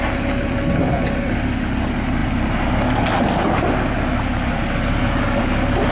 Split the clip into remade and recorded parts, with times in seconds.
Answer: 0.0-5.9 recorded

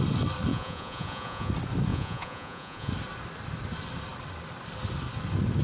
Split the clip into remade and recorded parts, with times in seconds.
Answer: 0.0-0.5 recorded; 0.5-1.5 remade; 1.5-1.9 recorded; 1.9-2.9 remade; 2.9-5.6 recorded

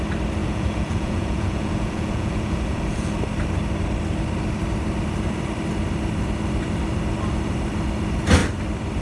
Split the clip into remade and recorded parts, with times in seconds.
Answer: 0.0-0.4 recorded; 0.4-3.2 remade; 3.2-9.0 recorded